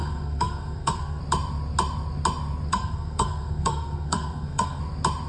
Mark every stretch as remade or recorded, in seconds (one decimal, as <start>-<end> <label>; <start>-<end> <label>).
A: 0.0-1.2 remade; 1.2-2.7 recorded; 2.7-4.8 remade; 4.8-5.3 recorded